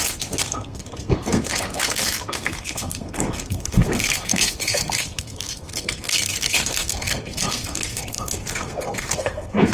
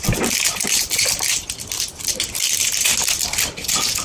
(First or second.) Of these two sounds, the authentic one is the second